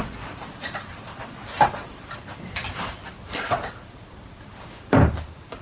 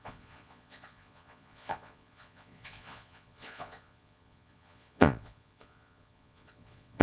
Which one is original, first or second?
first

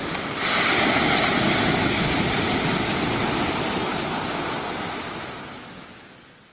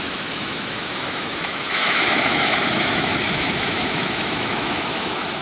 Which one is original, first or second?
first